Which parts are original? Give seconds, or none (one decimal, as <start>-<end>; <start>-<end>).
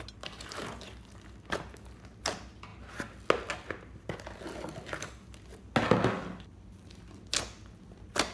0.0-8.3